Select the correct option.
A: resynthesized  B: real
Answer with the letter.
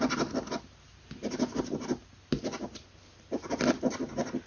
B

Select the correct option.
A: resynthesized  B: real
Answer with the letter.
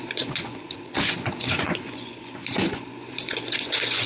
A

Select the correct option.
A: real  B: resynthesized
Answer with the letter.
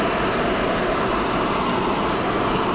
A